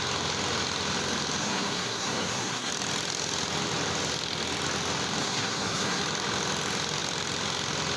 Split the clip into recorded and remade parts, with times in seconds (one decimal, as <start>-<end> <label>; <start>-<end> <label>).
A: 0.0-1.4 recorded; 1.4-2.7 remade; 2.7-5.2 recorded; 5.2-6.0 remade; 6.0-8.0 recorded